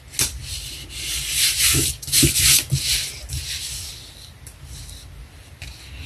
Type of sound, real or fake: real